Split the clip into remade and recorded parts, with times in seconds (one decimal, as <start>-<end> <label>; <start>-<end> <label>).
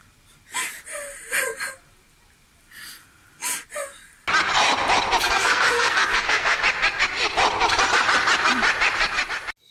0.0-5.2 recorded; 5.2-6.6 remade; 6.6-9.7 recorded